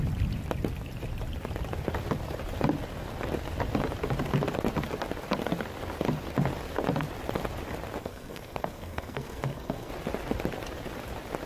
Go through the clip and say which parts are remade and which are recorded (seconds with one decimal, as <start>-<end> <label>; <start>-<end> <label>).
0.0-8.0 recorded; 8.0-9.9 remade; 9.9-11.5 recorded